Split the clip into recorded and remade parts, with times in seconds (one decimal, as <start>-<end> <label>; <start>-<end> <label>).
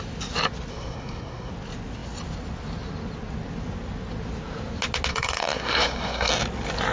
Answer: 0.0-0.7 recorded; 0.7-1.5 remade; 1.5-5.1 recorded; 5.1-6.3 remade; 6.3-6.9 recorded